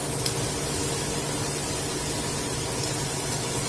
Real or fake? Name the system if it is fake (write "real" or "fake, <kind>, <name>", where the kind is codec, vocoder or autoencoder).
real